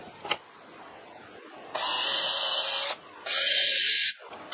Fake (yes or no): no